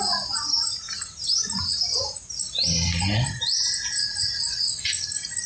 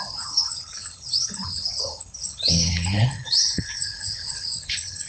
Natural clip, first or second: first